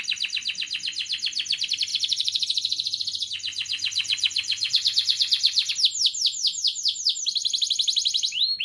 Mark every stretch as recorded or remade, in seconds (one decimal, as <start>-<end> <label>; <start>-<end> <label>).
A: 0.0-1.9 recorded; 1.9-5.7 remade; 5.7-8.6 recorded